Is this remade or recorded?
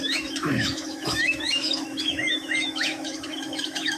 remade